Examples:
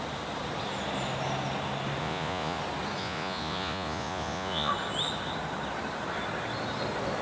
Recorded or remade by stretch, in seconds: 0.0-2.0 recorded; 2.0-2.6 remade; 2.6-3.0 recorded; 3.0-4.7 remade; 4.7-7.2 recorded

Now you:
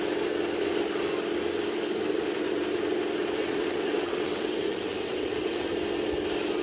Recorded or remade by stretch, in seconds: 0.0-3.4 recorded; 3.4-5.7 remade; 5.7-6.6 recorded

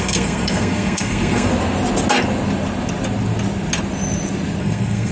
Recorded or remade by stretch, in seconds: 0.0-1.5 remade; 1.5-4.6 recorded; 4.6-5.1 remade

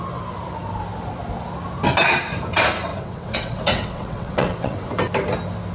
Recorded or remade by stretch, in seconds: 0.0-2.9 recorded; 2.9-4.9 remade; 4.9-5.7 recorded

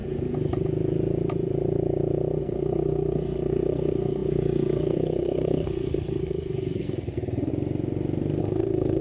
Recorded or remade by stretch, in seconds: 0.0-2.4 recorded; 2.4-7.5 remade; 7.5-8.4 recorded; 8.4-9.0 remade

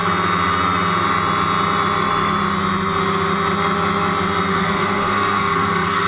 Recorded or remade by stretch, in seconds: 0.0-4.5 recorded; 4.5-6.1 remade

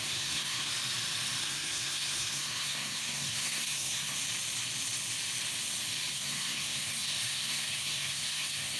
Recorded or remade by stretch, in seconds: 0.0-0.7 remade; 0.7-1.4 recorded; 1.4-4.2 remade; 4.2-6.1 recorded; 6.1-8.8 remade